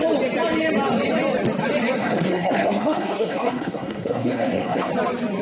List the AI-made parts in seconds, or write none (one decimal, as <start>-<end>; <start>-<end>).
2.0-4.9